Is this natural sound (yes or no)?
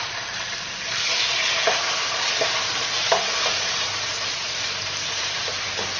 no